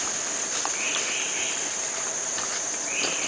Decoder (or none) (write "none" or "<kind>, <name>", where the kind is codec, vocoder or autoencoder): none